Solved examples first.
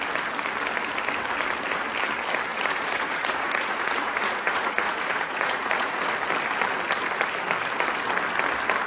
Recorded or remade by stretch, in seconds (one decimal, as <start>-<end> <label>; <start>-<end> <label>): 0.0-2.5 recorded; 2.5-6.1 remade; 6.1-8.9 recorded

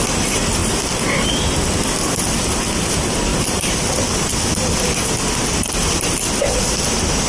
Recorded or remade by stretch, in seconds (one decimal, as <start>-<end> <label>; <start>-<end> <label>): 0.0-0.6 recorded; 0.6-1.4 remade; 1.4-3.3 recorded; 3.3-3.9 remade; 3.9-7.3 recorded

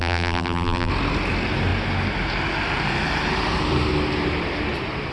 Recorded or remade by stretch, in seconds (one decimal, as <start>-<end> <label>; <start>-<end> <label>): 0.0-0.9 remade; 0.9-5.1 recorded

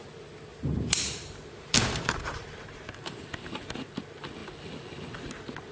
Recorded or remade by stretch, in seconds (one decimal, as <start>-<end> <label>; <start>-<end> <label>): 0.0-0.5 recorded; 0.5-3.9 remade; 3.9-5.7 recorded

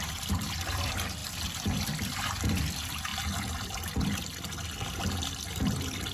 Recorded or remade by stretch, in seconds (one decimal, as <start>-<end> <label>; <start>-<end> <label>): 0.0-1.2 remade; 1.2-2.0 recorded; 2.0-3.1 remade; 3.1-4.9 recorded; 4.9-6.1 remade

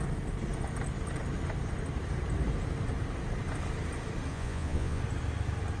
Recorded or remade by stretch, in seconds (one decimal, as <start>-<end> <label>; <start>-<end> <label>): 0.0-4.3 recorded; 4.3-5.0 remade; 5.0-5.8 recorded

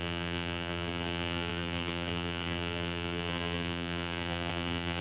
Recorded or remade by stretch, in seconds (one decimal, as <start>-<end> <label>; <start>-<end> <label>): 0.0-5.0 remade

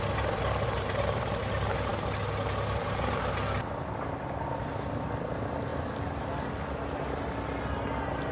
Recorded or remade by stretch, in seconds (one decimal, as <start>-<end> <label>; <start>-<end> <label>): 0.0-8.3 recorded